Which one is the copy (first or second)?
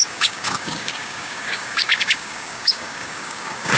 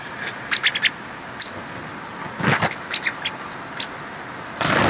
first